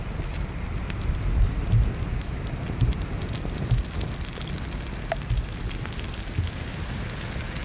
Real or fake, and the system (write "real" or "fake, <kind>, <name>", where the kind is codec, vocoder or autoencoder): real